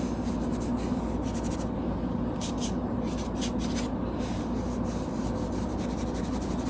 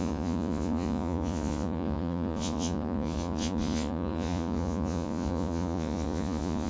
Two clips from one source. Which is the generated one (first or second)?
second